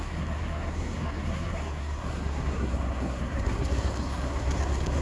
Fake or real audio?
fake